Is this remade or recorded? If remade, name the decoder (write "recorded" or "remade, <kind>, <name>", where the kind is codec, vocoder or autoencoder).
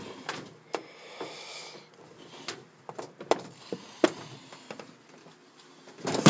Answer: recorded